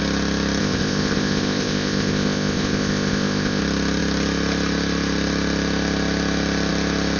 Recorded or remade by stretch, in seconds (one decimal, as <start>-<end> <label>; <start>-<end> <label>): 0.0-0.6 recorded; 0.6-3.6 remade; 3.6-7.2 recorded